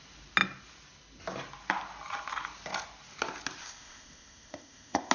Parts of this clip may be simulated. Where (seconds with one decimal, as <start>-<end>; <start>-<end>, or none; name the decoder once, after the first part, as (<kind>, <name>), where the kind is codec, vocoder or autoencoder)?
3.6-5.1 (codec, ZipCodec)